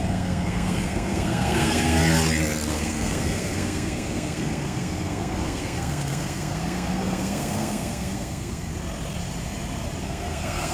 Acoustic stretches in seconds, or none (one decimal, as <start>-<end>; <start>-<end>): 2.0-2.7; 8.7-10.0